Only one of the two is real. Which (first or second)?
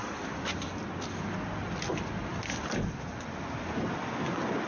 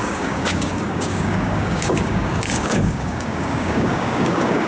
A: first